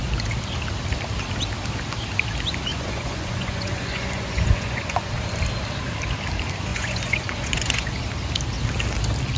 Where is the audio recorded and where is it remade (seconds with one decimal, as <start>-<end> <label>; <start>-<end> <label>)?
0.0-2.7 recorded; 2.7-5.1 remade; 5.1-6.7 recorded; 6.7-7.9 remade; 7.9-9.4 recorded